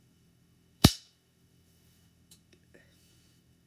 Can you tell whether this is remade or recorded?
remade